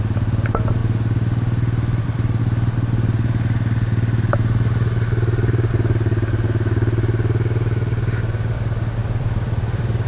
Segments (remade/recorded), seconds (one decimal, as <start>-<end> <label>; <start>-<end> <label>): 0.0-9.0 recorded; 9.0-10.1 remade